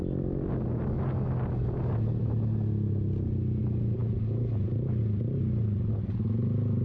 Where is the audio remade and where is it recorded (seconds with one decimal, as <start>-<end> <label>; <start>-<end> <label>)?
0.0-6.8 recorded